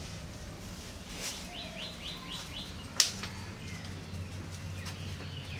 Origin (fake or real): real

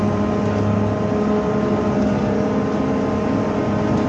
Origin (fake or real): real